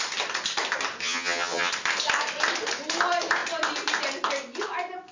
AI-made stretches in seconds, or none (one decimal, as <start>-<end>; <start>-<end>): 1.0-1.7